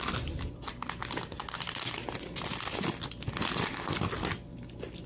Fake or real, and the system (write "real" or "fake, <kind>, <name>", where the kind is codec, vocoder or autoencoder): real